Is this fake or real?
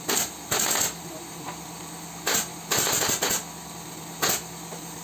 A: real